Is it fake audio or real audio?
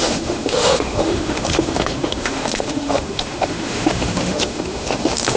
fake